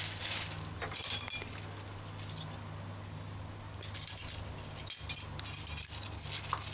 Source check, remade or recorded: recorded